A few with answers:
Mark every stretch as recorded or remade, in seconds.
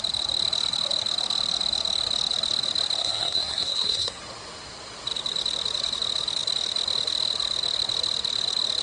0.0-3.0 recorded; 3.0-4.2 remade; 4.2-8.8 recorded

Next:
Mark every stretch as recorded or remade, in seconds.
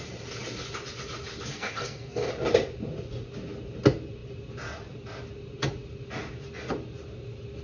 0.0-1.5 recorded; 1.5-2.3 remade; 2.3-7.6 recorded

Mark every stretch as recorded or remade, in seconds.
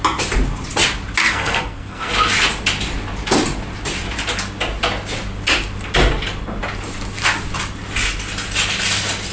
0.0-1.2 recorded; 1.2-2.1 remade; 2.1-9.3 recorded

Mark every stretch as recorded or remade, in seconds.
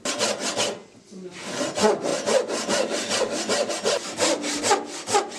0.0-5.4 recorded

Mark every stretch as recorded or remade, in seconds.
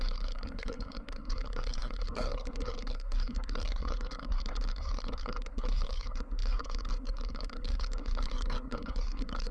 0.0-9.5 remade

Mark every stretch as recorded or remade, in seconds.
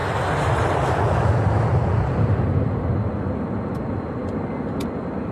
0.0-5.3 recorded